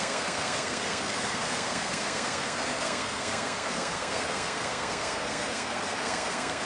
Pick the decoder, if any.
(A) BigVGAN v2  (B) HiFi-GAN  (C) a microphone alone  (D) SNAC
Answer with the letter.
D